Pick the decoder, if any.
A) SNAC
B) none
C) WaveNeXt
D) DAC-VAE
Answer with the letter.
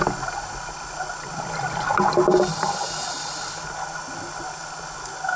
B